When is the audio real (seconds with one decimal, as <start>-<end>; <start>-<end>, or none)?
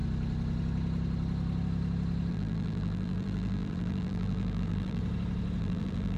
0.0-2.3; 5.0-5.6